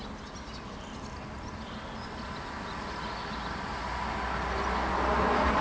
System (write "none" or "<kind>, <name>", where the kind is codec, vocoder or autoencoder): none